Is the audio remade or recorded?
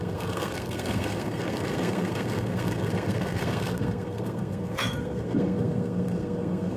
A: remade